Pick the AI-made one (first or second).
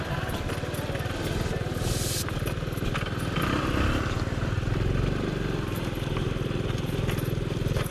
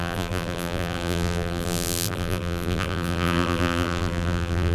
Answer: second